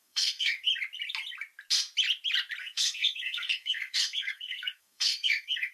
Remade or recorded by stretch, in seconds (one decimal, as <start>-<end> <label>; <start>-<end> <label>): 0.0-0.7 remade; 0.7-2.6 recorded; 2.6-5.7 remade